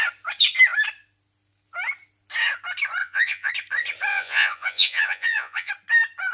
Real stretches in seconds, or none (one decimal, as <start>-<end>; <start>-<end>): 0.0-3.0; 3.5-4.1; 5.7-6.3